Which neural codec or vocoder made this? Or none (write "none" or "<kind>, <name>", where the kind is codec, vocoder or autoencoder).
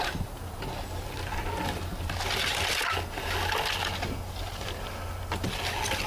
none